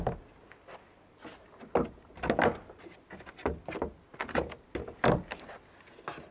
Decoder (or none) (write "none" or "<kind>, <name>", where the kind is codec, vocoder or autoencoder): none